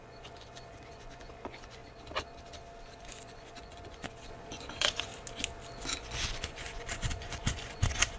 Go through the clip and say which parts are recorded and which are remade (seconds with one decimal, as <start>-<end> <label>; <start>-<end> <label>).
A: 0.0-1.8 remade; 1.8-3.0 recorded; 3.0-5.1 remade; 5.1-5.8 recorded; 5.8-8.2 remade